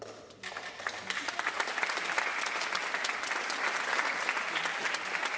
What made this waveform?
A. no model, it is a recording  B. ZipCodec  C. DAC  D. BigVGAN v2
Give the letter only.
A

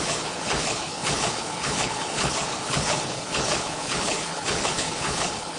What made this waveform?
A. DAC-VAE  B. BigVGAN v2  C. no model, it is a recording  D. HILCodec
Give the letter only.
D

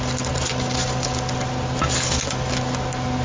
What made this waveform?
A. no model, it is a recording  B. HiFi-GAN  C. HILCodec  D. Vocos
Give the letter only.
A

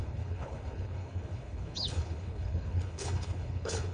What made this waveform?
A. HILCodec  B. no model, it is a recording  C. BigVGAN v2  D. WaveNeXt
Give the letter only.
A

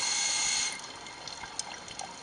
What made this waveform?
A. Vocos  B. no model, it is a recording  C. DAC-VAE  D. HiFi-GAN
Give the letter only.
B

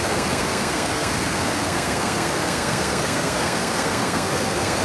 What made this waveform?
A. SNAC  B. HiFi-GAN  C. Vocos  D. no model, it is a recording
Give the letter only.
A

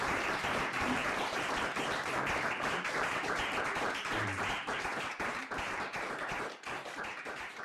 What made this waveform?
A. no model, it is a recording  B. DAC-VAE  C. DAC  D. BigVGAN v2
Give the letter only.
D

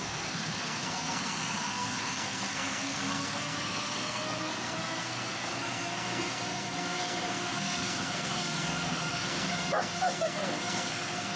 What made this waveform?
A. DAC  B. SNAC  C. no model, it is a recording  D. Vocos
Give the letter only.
B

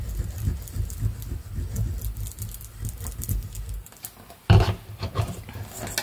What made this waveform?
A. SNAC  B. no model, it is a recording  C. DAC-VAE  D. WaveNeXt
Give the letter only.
B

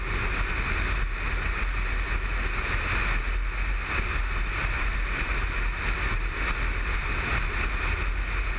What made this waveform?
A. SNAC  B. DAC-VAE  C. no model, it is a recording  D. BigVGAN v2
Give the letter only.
C